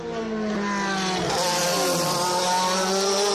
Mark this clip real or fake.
real